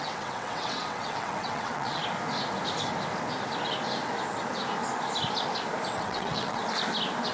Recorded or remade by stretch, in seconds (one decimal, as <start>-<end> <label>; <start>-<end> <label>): 0.0-2.0 remade; 2.0-5.9 recorded; 5.9-6.6 remade; 6.6-7.3 recorded